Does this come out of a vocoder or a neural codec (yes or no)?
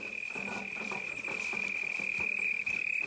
no